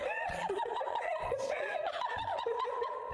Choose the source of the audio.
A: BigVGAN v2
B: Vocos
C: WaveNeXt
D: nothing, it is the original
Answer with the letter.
B